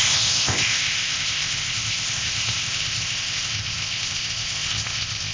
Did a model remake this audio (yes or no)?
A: yes